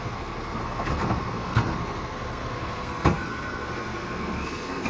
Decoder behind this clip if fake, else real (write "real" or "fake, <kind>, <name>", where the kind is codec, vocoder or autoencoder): fake, codec, SNAC